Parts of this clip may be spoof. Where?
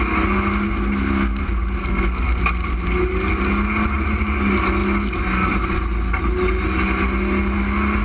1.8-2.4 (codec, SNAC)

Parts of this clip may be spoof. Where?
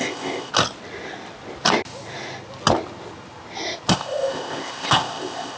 0.0-0.5 (codec, ZipCodec); 3.9-5.6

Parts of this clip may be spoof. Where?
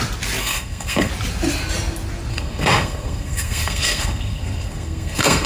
0.4-1.1 (codec, SNAC); 2.3-5.5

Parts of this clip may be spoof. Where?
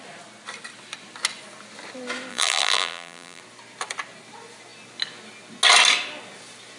2.3-3.4 (vocoder, BigVGAN v2)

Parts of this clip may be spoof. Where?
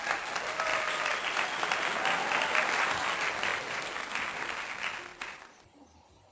5.1-5.6 (vocoder, BigVGAN v2)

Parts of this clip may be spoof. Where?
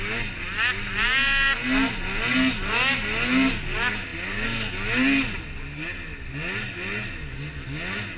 none